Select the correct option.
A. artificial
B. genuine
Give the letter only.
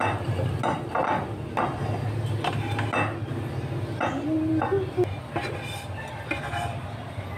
B